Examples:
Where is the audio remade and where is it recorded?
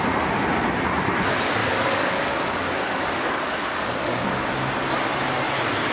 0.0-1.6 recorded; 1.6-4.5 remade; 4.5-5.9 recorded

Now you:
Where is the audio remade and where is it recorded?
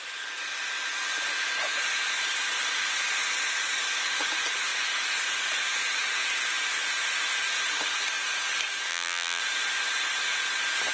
0.0-8.9 recorded; 8.9-9.4 remade; 9.4-10.9 recorded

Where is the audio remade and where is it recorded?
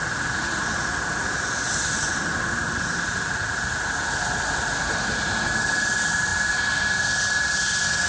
0.0-8.1 recorded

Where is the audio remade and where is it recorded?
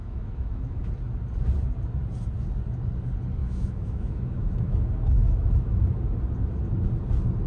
0.0-0.9 remade; 0.9-3.4 recorded; 3.4-5.8 remade; 5.8-7.5 recorded